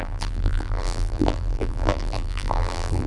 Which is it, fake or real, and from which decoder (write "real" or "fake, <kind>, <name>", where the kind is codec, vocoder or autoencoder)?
fake, vocoder, BigVGAN v2